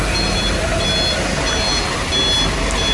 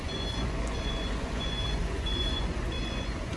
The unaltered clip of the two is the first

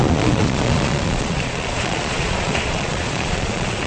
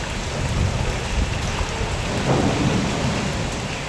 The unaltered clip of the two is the second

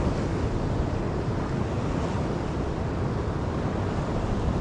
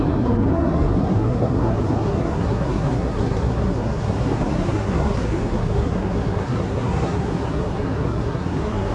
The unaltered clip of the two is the first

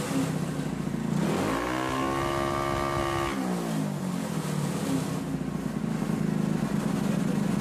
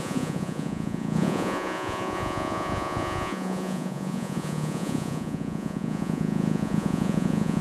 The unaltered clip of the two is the first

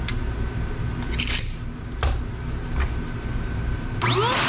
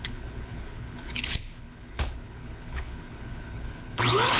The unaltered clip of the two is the first